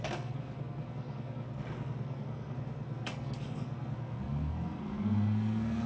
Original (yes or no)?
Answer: no